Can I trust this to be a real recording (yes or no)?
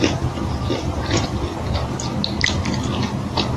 yes